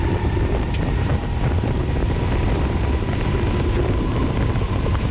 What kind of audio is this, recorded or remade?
recorded